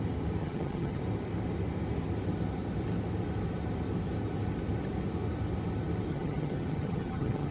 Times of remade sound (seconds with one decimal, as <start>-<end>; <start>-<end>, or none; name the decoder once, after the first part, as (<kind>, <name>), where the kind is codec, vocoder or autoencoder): 0.4-1.0 (vocoder, HiFi-GAN); 6.1-7.5